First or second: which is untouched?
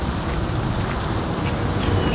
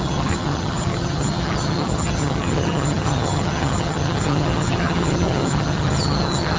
first